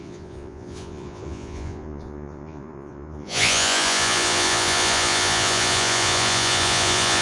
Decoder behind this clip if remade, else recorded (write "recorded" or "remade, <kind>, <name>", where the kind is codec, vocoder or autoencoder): remade, vocoder, Vocos